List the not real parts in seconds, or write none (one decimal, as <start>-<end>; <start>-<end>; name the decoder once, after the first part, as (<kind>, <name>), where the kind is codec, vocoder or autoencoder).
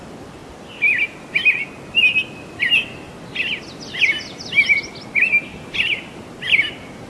none